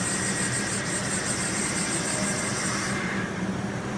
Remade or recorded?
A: remade